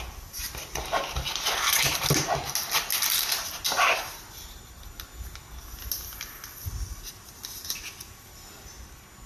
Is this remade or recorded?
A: recorded